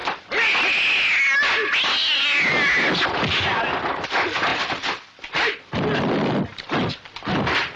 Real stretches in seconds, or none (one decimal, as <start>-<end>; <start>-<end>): 0.0-7.8